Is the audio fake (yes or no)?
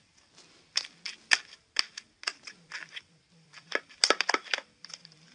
no